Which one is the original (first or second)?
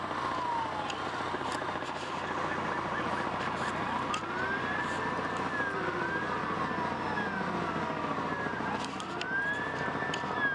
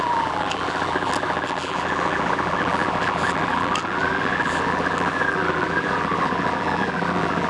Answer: first